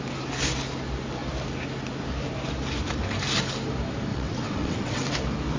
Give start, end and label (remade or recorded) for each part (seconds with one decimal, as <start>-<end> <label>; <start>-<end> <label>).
0.0-4.1 recorded; 4.1-5.1 remade; 5.1-5.6 recorded